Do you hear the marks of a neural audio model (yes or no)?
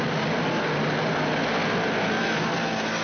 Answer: no